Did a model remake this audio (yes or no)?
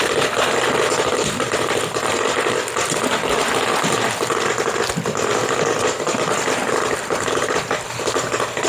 no